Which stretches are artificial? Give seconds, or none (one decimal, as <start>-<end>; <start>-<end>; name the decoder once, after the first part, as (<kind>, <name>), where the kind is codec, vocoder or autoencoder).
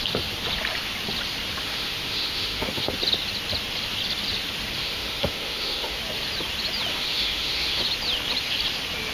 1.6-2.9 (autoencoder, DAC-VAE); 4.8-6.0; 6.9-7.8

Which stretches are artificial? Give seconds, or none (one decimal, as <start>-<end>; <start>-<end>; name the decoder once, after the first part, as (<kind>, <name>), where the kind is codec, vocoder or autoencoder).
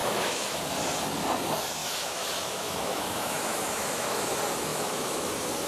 0.0-0.6 (autoencoder, DAC-VAE); 1.8-4.2; 4.7-5.3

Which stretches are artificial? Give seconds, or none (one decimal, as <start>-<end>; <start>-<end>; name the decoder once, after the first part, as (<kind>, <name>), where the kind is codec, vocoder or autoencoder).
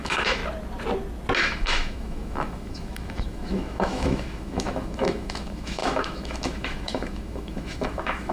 0.0-0.4 (autoencoder, DAC-VAE); 1.4-8.3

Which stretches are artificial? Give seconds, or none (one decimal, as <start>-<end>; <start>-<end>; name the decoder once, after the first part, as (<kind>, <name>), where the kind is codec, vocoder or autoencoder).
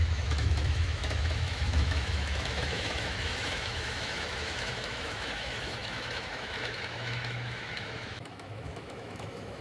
0.0-9.6 (autoencoder, DAC-VAE)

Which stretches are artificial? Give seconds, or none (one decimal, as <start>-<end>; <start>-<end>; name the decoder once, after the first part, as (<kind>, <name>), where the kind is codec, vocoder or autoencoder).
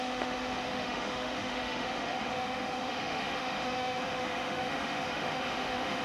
0.0-6.0 (autoencoder, DAC-VAE)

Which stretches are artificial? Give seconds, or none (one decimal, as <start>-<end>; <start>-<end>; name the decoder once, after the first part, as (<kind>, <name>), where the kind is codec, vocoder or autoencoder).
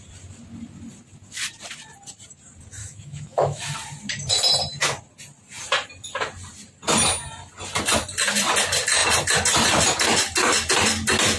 2.8-3.7 (autoencoder, DAC-VAE)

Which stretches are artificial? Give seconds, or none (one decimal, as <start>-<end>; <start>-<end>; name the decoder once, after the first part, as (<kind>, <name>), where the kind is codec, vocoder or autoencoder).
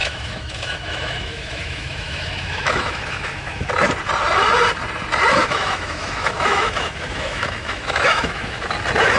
0.0-3.7 (autoencoder, DAC-VAE); 5.4-8.7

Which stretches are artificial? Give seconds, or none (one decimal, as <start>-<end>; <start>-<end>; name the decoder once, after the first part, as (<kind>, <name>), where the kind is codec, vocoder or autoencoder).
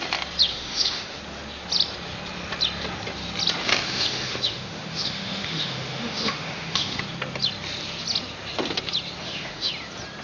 0.5-1.2 (autoencoder, DAC-VAE); 3.6-7.0; 9.2-9.7